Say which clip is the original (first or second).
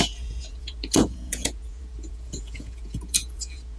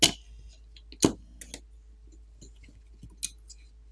second